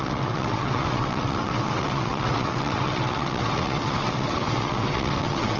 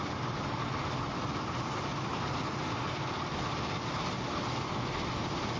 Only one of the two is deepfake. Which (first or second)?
first